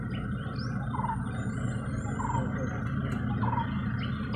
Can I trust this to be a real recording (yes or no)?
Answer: yes